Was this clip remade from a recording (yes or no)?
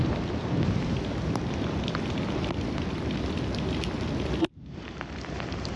yes